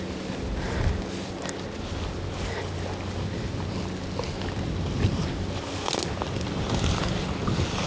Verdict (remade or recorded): recorded